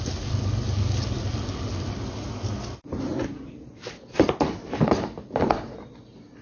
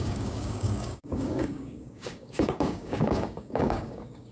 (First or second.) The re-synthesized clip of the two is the second